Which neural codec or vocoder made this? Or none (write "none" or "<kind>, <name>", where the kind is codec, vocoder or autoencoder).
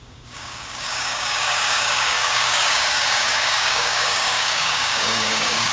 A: codec, DAC